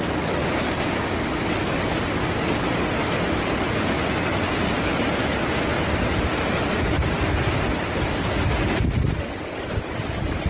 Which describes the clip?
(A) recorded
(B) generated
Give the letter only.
A